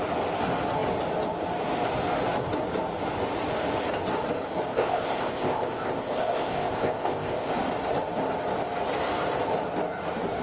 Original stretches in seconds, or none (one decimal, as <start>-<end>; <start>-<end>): 0.0-4.7; 7.5-10.4

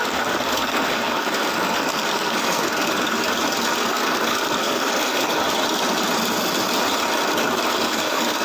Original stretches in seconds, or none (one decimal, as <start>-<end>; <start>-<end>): 3.2-3.9; 5.4-7.7

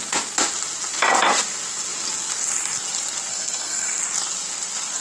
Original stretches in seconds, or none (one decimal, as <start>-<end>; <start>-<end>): 0.0-3.3; 4.0-5.0

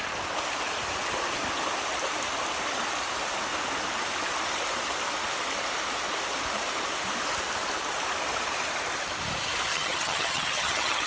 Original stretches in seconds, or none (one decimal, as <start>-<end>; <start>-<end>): 0.0-9.7

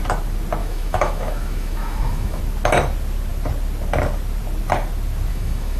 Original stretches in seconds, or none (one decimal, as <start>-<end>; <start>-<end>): 0.0-0.6; 2.4-5.3

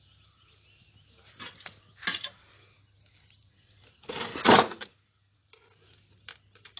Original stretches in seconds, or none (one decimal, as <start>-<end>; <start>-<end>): 0.0-4.3; 4.9-6.8